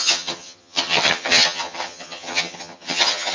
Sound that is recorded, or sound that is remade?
remade